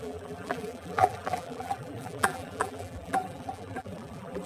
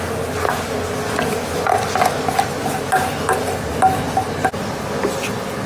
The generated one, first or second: first